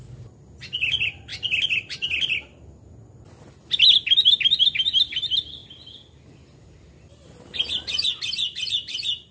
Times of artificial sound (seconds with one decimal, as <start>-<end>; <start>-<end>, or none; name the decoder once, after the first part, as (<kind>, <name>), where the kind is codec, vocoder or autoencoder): 1.3-2.6 (vocoder, BigVGAN v2)